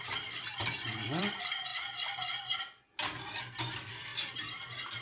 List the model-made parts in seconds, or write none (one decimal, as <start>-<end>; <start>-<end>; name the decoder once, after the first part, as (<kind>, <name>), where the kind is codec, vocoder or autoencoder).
0.0-1.7 (vocoder, BigVGAN v2); 3.4-4.1